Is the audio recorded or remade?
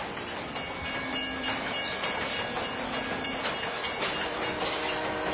remade